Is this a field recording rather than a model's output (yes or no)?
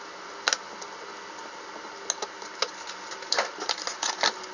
yes